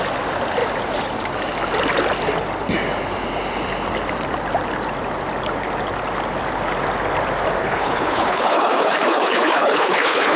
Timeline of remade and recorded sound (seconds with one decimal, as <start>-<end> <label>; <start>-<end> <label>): 0.0-7.6 recorded; 7.6-10.4 remade